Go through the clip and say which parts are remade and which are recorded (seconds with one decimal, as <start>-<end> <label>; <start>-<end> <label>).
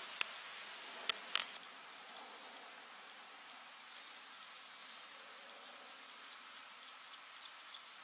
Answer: 0.0-8.0 recorded